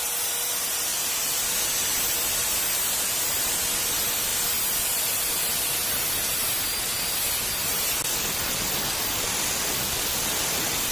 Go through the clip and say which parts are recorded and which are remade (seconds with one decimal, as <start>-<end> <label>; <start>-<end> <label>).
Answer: 0.0-10.9 recorded